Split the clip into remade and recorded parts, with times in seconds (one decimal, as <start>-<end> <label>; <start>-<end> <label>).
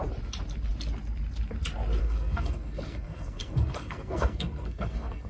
0.0-2.0 recorded; 2.0-5.3 remade